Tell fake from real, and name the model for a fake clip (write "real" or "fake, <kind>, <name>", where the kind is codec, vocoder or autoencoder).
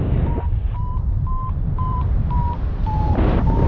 fake, vocoder, BigVGAN v2